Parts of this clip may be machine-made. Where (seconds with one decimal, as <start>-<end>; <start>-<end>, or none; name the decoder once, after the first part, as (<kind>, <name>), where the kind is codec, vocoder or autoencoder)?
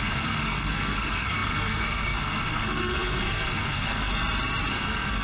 0.0-4.1 (codec, SNAC); 4.7-5.2